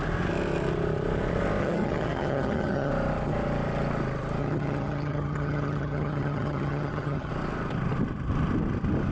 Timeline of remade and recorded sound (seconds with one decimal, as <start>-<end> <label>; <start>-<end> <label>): 0.0-1.6 recorded; 1.6-2.9 remade; 2.9-4.4 recorded; 4.4-7.3 remade; 7.3-9.1 recorded